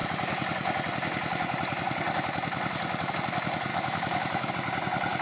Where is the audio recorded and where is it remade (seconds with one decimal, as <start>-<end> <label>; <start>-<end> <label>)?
0.0-3.7 recorded; 3.7-4.5 remade; 4.5-5.2 recorded